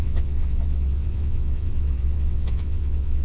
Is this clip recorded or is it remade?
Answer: remade